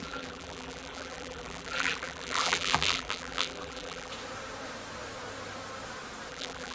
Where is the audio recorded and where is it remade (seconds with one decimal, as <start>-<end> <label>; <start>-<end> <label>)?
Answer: 0.0-4.1 remade; 4.1-6.3 recorded; 6.3-6.7 remade